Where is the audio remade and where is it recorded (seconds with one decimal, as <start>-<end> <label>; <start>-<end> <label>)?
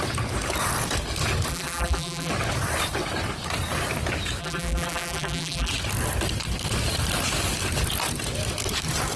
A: 0.0-1.5 recorded; 1.5-2.3 remade; 2.3-4.4 recorded; 4.4-5.7 remade; 5.7-9.2 recorded